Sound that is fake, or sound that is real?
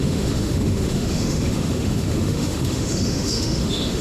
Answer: fake